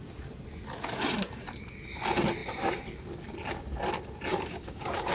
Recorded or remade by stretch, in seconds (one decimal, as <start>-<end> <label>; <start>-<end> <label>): 0.0-4.3 recorded; 4.3-5.1 remade